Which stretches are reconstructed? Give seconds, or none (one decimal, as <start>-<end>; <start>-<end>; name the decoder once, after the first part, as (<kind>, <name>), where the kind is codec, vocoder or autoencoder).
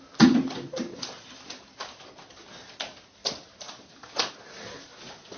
0.9-2.2 (vocoder, BigVGAN v2)